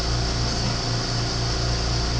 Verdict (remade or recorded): recorded